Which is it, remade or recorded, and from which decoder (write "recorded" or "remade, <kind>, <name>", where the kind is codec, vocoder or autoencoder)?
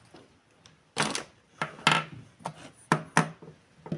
recorded